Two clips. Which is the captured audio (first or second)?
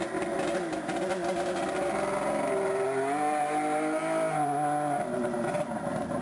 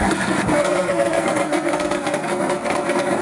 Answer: first